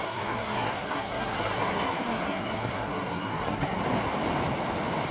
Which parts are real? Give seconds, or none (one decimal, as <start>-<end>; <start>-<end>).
3.8-5.1